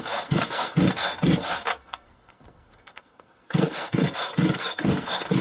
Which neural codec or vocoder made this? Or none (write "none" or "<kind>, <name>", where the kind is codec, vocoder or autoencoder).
codec, SNAC